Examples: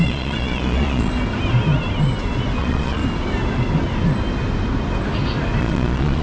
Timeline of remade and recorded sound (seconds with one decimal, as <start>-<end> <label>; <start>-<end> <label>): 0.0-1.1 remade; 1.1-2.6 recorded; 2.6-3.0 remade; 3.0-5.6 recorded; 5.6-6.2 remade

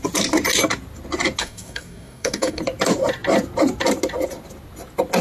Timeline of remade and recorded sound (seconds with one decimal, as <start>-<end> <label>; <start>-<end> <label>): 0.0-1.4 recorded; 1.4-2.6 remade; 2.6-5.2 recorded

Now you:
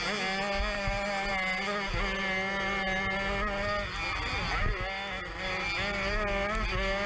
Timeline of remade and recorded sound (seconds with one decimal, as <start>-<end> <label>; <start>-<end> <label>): 0.0-7.1 recorded

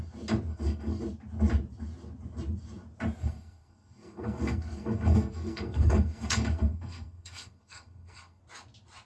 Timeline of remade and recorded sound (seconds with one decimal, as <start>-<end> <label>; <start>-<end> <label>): 0.0-0.5 recorded; 0.5-1.0 remade; 1.0-3.2 recorded; 3.2-8.4 remade; 8.4-9.1 recorded

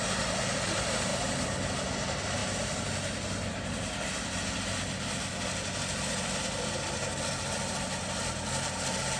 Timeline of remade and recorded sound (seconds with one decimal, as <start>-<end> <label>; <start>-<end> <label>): 0.0-9.2 recorded

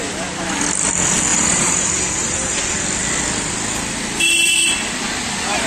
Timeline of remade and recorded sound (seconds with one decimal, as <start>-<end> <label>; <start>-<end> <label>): 0.0-1.3 recorded; 1.3-2.6 remade; 2.6-5.7 recorded

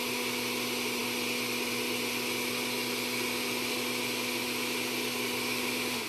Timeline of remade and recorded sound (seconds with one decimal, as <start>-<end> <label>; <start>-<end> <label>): 0.0-6.1 recorded